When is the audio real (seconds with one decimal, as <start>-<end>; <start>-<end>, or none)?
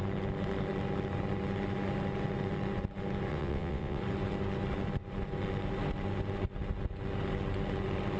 0.0-3.3; 4.0-8.2